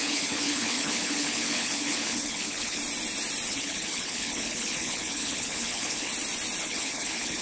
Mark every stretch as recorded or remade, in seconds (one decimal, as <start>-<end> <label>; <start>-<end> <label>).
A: 0.0-2.8 remade; 2.8-3.5 recorded; 3.5-6.1 remade; 6.1-6.6 recorded; 6.6-7.4 remade